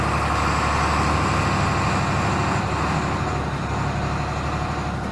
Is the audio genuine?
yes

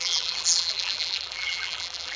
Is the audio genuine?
no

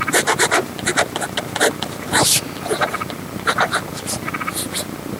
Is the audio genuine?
no